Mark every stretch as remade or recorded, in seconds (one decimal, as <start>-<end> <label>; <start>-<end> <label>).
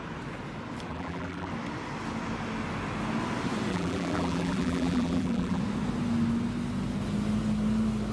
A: 0.0-0.9 recorded; 0.9-1.5 remade; 1.5-3.7 recorded; 3.7-5.6 remade; 5.6-8.1 recorded